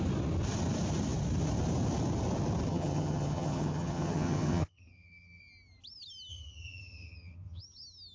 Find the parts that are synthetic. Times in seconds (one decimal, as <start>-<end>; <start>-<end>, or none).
2.7-5.4; 6.3-7.6